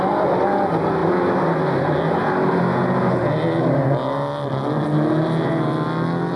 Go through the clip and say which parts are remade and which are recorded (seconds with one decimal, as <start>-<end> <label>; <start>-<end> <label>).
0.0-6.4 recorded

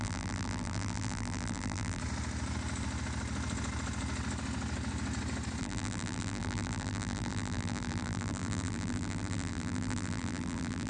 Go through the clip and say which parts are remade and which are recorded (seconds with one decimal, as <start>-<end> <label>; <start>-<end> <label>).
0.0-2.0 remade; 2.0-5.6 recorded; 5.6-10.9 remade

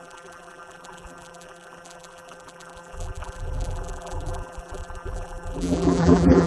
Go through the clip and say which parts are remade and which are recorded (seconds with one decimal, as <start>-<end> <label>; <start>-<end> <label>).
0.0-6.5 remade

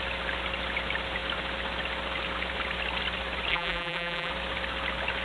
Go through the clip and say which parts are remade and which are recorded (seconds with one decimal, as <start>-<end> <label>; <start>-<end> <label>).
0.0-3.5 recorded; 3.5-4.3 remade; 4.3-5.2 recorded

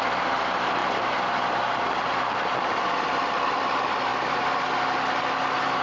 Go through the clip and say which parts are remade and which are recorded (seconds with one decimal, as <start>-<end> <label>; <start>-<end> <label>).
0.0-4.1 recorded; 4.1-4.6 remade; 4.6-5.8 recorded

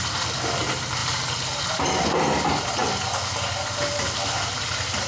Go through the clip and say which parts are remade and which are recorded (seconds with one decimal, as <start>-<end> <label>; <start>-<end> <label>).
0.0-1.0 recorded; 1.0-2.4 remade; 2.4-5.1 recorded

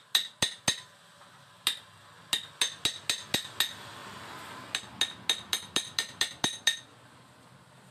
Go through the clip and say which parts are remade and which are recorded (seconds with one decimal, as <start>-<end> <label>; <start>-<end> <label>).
0.0-7.9 recorded